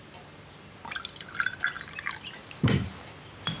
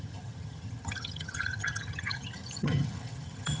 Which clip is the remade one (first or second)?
second